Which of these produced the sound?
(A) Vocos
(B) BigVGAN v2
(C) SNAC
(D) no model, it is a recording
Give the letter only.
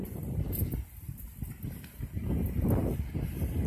D